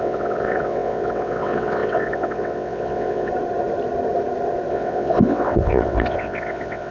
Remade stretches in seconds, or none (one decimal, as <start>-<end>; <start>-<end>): 0.0-3.3; 4.7-6.9